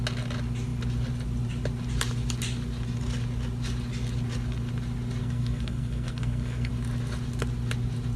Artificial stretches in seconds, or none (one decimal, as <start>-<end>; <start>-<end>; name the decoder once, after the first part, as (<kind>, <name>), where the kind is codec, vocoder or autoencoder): 5.2-6.7 (codec, SNAC)

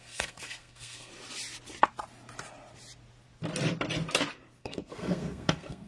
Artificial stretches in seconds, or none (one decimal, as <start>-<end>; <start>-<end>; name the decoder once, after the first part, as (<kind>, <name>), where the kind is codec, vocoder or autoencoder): 0.0-1.1 (codec, SNAC); 4.6-5.9

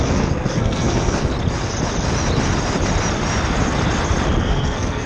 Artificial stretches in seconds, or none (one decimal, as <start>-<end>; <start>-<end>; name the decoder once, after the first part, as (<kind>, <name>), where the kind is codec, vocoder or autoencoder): 0.0-1.3 (codec, SNAC); 4.4-5.1

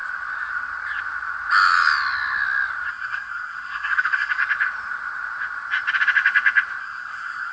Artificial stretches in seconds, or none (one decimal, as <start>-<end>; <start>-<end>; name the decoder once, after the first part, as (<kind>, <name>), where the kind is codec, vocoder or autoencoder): 2.9-4.4 (codec, SNAC); 6.8-7.5

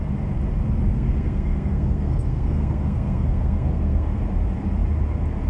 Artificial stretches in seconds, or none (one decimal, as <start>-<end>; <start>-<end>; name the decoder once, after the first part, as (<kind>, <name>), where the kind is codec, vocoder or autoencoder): 0.9-4.2 (codec, SNAC)

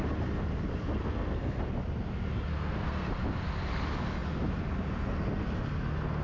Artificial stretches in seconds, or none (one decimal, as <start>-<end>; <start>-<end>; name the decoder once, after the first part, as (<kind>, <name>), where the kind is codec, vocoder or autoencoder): 1.0-1.6 (codec, SNAC); 2.5-3.1

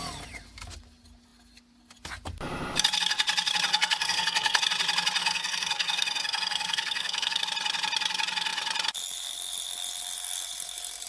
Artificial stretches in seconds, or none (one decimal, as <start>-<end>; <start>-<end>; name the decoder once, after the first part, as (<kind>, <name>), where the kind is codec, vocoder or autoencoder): 3.7-4.6 (codec, SNAC); 5.2-7.4